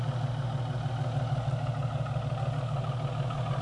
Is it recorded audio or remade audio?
recorded